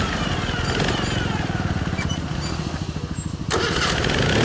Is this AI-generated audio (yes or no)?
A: no